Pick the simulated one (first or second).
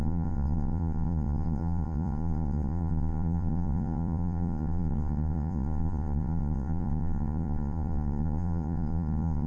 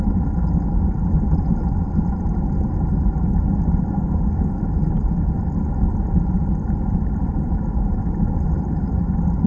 first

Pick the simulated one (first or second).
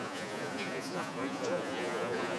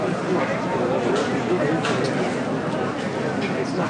first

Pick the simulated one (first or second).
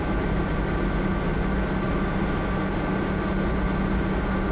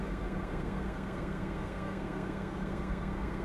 second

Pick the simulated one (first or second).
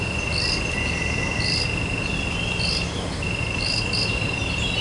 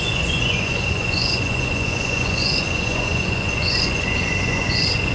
second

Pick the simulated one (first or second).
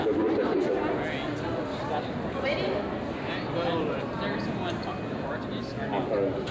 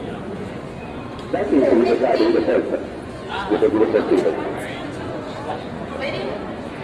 second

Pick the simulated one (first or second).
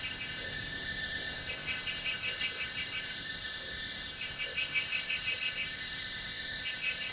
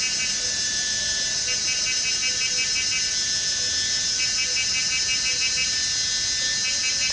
first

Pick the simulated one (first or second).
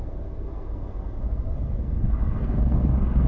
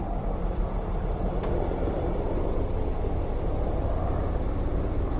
first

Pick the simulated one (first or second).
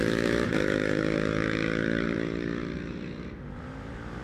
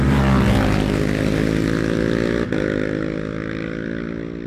first